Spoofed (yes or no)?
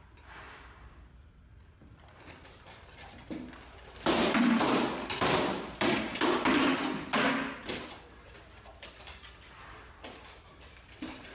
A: no